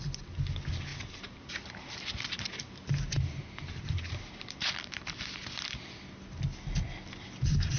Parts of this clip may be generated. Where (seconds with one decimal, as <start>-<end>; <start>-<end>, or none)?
0.9-5.6